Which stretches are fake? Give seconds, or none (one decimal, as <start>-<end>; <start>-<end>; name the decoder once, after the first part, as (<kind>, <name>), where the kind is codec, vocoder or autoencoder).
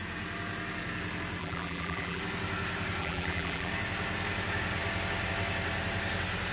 1.4-2.2 (vocoder, BigVGAN v2); 3.0-3.7